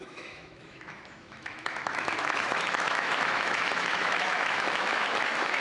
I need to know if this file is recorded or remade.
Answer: remade